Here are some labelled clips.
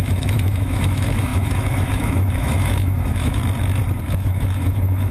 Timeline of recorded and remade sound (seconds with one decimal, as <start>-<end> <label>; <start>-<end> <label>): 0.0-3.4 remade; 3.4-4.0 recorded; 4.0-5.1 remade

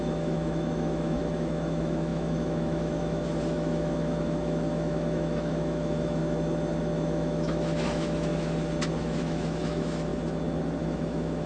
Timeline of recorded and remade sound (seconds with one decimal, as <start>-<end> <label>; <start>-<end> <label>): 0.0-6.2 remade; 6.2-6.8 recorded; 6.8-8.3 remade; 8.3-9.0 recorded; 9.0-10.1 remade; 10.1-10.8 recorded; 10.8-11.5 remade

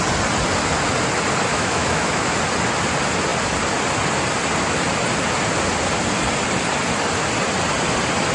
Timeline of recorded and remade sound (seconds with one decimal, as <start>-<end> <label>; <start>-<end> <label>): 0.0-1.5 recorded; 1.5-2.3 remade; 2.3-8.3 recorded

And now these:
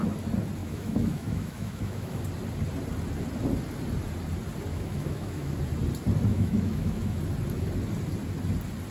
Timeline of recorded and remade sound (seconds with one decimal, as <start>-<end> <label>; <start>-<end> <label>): 0.0-0.6 recorded; 0.6-2.2 remade; 2.2-4.7 recorded; 4.7-5.6 remade; 5.6-6.3 recorded; 6.3-7.2 remade; 7.2-8.9 recorded